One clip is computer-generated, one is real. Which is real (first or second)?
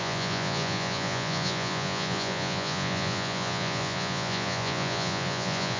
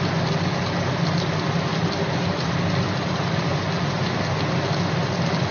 second